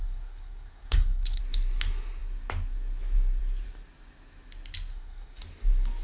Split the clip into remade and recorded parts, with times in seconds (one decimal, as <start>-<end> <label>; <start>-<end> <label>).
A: 0.0-1.4 remade; 1.4-4.9 recorded; 4.9-5.4 remade; 5.4-6.0 recorded